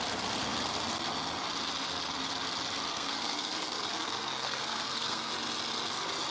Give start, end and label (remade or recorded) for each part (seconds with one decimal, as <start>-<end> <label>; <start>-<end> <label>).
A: 0.0-2.9 recorded; 2.9-5.3 remade; 5.3-6.3 recorded